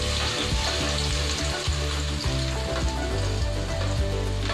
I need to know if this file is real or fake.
real